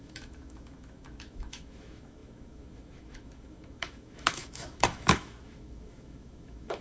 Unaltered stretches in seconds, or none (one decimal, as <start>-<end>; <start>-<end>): none